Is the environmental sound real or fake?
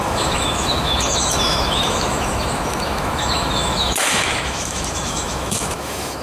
fake